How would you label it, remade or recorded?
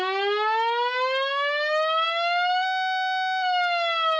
recorded